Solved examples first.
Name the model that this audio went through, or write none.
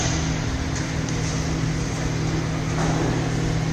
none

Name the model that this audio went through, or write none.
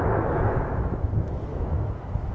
autoencoder, DAC-VAE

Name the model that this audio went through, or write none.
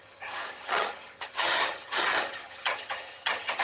vocoder, HiFi-GAN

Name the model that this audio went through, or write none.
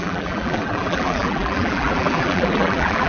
vocoder, BigVGAN v2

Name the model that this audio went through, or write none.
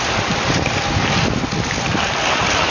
none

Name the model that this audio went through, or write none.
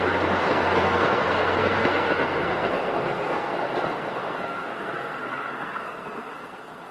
codec, SNAC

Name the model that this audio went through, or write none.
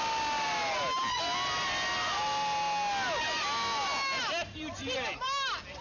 none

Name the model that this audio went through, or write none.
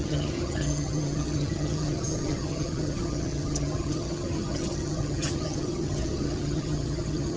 vocoder, HiFi-GAN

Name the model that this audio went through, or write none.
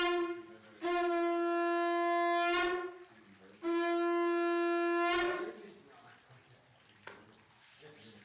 none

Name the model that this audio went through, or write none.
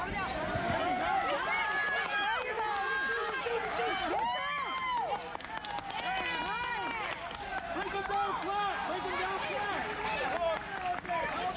none